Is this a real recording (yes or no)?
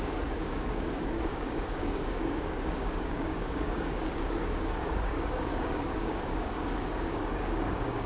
no